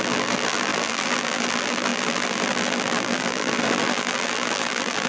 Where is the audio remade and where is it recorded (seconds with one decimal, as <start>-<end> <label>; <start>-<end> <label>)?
0.0-5.1 remade